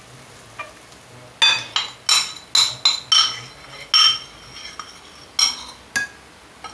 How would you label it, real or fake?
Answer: real